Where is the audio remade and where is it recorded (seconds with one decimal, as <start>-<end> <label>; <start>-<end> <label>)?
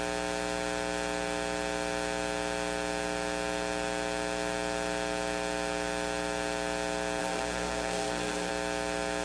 0.0-7.2 recorded; 7.2-8.5 remade; 8.5-9.2 recorded